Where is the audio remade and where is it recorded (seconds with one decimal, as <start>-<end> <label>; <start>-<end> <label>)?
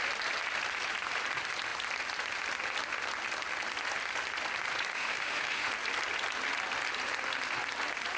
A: 0.0-4.9 recorded; 4.9-5.7 remade; 5.7-8.2 recorded